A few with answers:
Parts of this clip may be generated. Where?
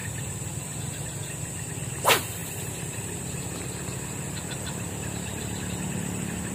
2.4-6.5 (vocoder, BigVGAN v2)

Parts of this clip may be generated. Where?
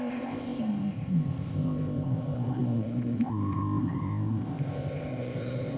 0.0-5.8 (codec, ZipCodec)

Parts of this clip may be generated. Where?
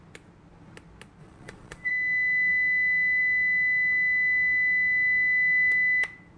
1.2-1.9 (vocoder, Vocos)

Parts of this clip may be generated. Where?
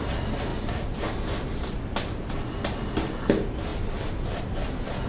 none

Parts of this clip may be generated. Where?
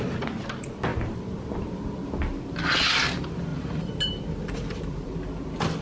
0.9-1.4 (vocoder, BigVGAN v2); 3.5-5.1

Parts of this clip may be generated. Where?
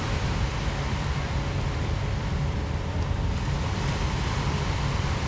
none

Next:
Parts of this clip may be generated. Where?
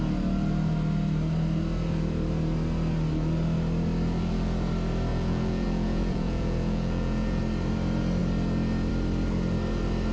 5.1-7.4 (vocoder, Vocos)